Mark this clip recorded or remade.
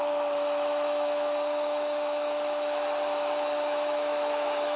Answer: remade